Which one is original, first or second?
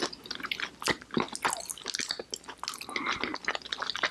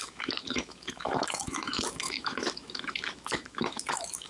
first